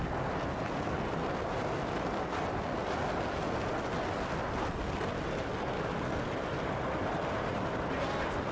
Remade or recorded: recorded